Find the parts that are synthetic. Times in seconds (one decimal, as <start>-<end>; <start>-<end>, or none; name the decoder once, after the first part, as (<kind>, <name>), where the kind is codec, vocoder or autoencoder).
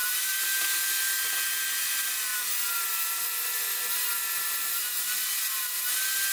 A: none